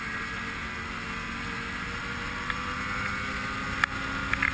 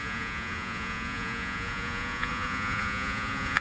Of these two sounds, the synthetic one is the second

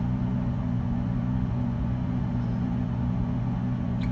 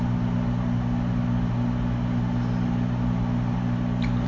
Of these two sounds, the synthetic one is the first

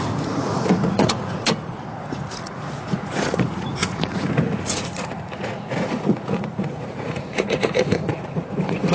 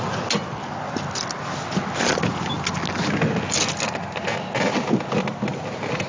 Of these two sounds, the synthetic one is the first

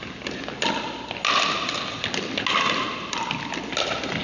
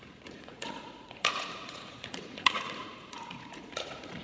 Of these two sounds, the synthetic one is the second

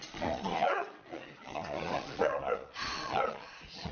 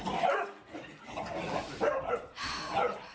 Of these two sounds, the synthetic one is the first